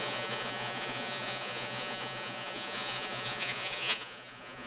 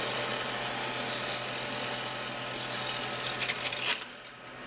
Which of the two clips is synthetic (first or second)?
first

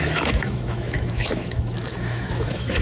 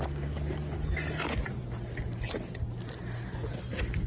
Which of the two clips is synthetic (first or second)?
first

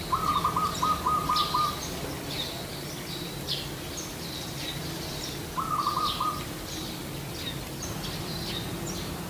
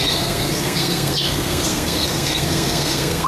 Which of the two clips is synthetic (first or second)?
second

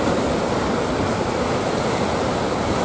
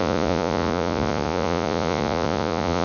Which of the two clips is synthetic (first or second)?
second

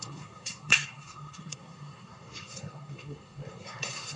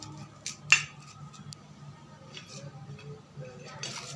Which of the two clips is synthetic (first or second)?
first